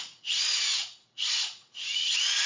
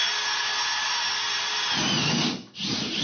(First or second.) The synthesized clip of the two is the first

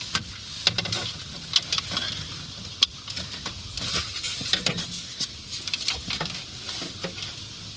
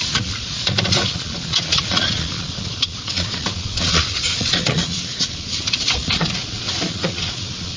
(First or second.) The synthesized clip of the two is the second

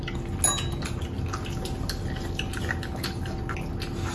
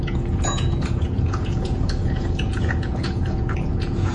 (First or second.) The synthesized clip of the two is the second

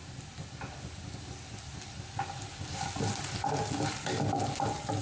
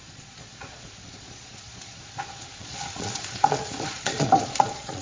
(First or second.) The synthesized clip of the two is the second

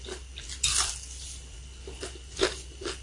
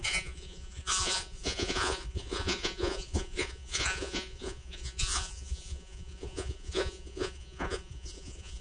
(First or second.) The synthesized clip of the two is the second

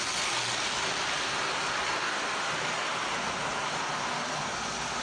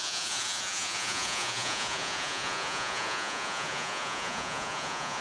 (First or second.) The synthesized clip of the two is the second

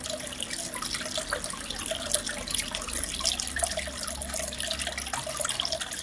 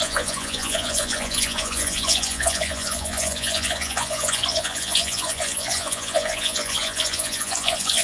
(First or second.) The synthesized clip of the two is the second